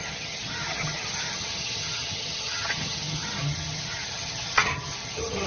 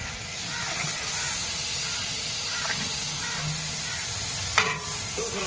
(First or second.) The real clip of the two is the second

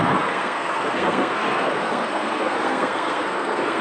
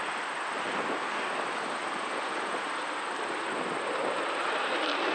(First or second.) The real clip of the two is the second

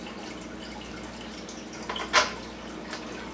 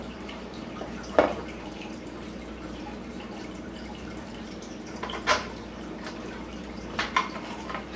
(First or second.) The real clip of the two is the first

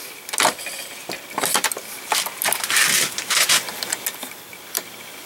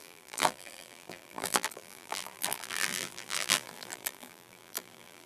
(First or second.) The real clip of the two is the first